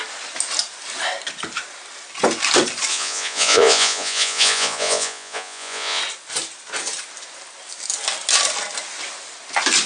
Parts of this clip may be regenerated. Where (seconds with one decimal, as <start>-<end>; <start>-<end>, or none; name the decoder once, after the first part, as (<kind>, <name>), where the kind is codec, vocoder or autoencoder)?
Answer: 2.9-6.0 (vocoder, Vocos)